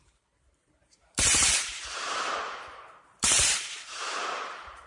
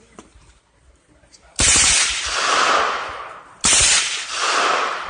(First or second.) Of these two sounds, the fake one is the first